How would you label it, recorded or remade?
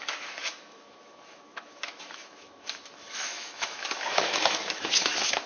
remade